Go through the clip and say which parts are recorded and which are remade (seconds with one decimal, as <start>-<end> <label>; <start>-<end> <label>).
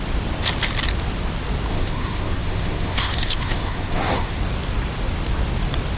0.0-1.7 recorded; 1.7-4.4 remade; 4.4-6.0 recorded